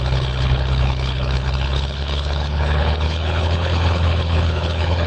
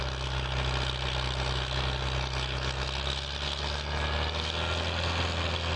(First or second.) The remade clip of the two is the first